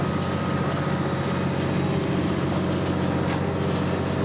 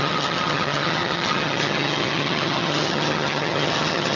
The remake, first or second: second